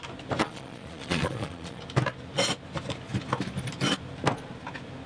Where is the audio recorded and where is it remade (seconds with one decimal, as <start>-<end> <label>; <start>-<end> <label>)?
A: 0.0-0.4 recorded; 0.4-1.8 remade; 1.8-5.1 recorded

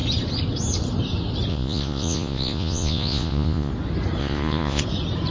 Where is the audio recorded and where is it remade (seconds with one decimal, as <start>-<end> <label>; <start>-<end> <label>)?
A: 0.0-1.5 recorded; 1.5-3.7 remade; 3.7-4.2 recorded; 4.2-4.8 remade; 4.8-5.3 recorded

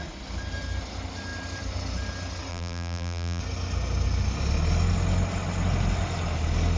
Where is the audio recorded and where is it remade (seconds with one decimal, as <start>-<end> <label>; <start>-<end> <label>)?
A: 0.0-2.5 recorded; 2.5-3.4 remade; 3.4-6.8 recorded